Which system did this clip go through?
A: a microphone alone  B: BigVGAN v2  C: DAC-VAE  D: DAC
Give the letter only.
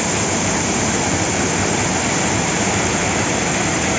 B